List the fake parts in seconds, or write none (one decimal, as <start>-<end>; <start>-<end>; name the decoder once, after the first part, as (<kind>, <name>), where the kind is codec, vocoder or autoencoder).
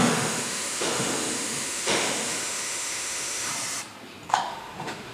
0.0-3.5 (autoencoder, DAC-VAE); 4.3-5.1